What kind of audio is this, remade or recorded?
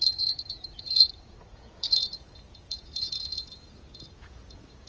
remade